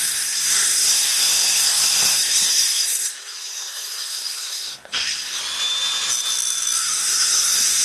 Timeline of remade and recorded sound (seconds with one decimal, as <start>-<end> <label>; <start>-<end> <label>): 0.0-5.4 remade; 5.4-6.8 recorded; 6.8-7.8 remade